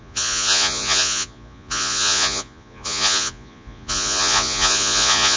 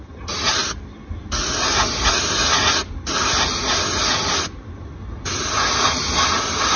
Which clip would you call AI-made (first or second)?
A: first